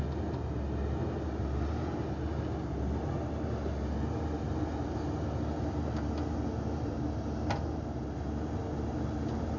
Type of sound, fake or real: real